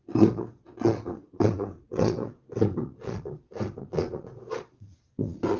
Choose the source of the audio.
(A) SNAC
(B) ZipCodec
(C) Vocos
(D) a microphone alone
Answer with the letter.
C